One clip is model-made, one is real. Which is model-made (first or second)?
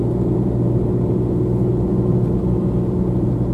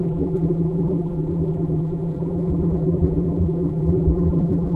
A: second